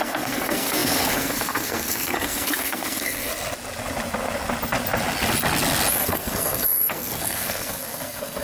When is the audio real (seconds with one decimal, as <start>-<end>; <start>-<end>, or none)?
3.3-5.9